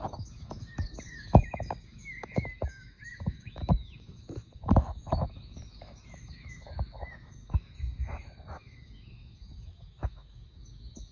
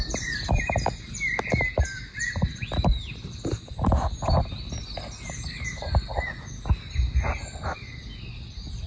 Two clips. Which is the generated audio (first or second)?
first